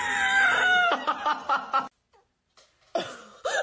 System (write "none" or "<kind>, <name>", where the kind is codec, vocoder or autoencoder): none